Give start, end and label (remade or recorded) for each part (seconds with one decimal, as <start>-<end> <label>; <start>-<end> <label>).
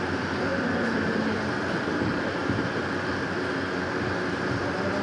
0.0-0.5 recorded; 0.5-1.9 remade; 1.9-5.0 recorded